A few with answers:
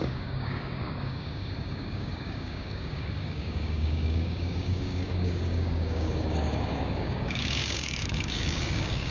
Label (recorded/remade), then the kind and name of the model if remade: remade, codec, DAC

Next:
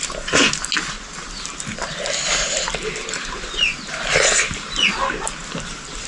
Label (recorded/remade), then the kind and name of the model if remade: recorded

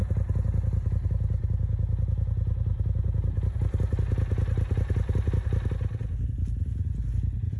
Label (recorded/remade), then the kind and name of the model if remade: recorded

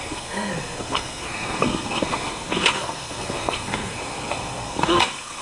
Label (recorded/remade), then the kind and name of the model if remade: remade, codec, SNAC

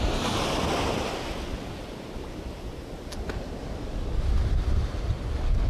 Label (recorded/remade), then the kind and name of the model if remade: recorded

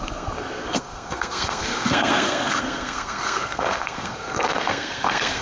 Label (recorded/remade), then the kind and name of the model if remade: remade, codec, SNAC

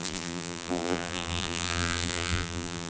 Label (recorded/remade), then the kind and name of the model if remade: remade, vocoder, BigVGAN v2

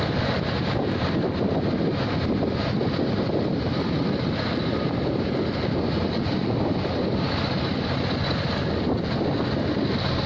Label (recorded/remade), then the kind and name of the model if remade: recorded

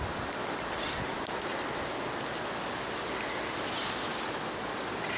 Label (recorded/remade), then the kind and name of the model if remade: recorded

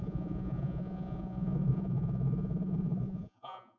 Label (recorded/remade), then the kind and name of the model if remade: remade, vocoder, Vocos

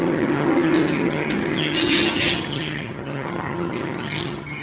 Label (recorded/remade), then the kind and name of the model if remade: remade, vocoder, HiFi-GAN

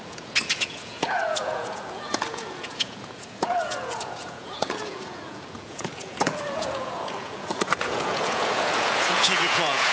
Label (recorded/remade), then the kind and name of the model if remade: remade, vocoder, Vocos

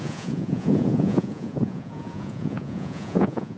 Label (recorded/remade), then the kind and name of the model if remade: remade, vocoder, Vocos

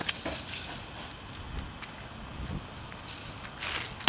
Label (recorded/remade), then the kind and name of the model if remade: recorded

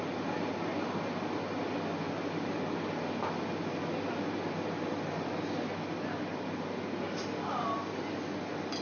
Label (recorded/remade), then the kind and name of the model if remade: recorded